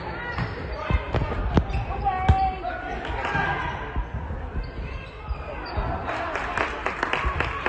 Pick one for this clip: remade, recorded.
recorded